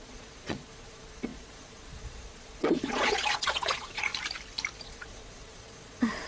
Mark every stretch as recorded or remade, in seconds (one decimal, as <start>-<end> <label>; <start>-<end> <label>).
0.0-4.1 remade; 4.1-4.8 recorded; 4.8-6.3 remade